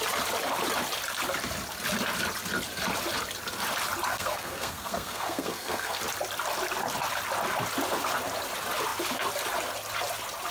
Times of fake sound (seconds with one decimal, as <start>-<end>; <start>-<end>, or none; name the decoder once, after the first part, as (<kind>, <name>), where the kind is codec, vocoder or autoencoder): 4.1-6.0 (codec, SNAC)